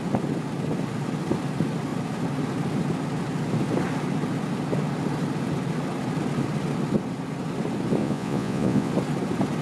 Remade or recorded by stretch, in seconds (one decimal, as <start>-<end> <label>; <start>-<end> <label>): 0.0-8.0 recorded; 8.0-8.9 remade; 8.9-9.6 recorded

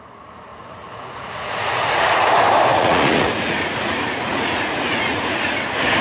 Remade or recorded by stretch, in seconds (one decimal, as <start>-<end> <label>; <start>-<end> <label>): 0.0-0.5 recorded; 0.5-2.3 remade; 2.3-2.7 recorded; 2.7-5.6 remade; 5.6-6.0 recorded

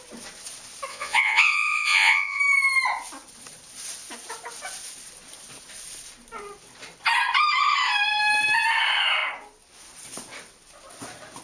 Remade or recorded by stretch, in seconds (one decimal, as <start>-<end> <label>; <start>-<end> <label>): 0.0-0.9 recorded; 0.9-2.4 remade; 2.4-11.4 recorded

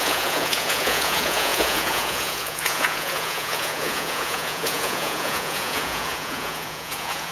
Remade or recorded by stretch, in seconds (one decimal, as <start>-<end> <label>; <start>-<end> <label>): 0.0-7.3 remade

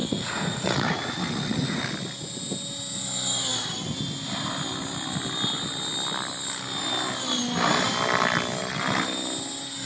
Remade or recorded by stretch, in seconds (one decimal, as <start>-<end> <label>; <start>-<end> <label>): 0.0-1.8 remade; 1.8-9.9 recorded

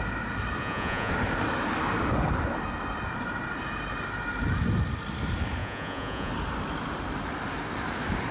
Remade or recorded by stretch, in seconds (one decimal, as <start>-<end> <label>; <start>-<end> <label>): 0.0-0.6 recorded; 0.6-1.1 remade; 1.1-5.6 recorded; 5.6-6.3 remade; 6.3-8.3 recorded